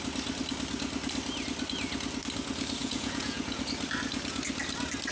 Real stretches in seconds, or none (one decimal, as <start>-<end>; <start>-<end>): 0.0-2.8; 3.6-5.1